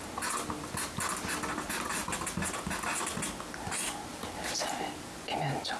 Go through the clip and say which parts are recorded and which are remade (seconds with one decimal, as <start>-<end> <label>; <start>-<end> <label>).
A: 0.0-5.8 recorded